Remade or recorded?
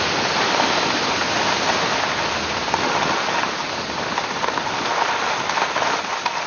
recorded